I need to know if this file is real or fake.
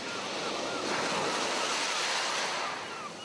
real